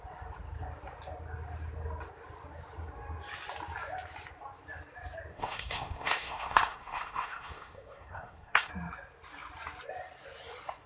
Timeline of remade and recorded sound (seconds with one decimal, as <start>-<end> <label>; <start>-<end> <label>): 0.0-5.3 recorded; 5.3-8.7 remade; 8.7-10.9 recorded